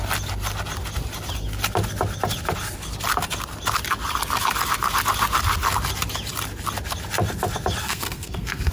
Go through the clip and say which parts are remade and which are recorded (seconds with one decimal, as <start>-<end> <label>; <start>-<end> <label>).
0.0-7.8 recorded; 7.8-8.7 remade